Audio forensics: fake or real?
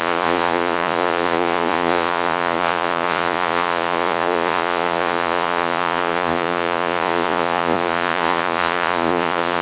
fake